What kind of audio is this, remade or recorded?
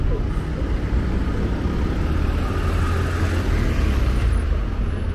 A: recorded